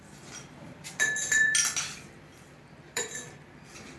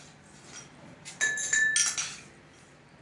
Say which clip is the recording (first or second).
second